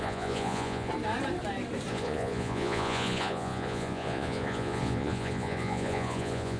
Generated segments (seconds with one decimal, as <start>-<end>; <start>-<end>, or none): 0.0-0.9; 1.9-6.6